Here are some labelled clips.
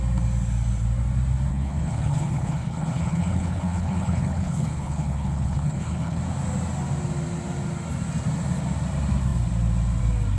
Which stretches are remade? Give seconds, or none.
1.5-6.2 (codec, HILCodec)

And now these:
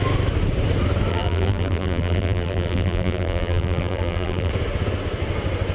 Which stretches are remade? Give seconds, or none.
1.1-4.5 (vocoder, BigVGAN v2)

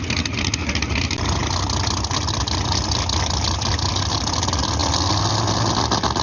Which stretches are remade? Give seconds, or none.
none

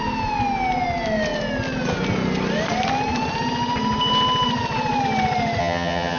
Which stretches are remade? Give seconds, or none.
5.6-6.2 (vocoder, HiFi-GAN)

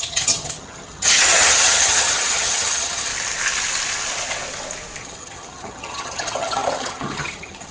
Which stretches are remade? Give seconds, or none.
0.0-3.1 (vocoder, HiFi-GAN); 5.0-7.7

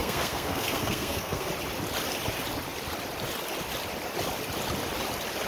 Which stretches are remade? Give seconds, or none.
0.0-1.5 (codec, SNAC)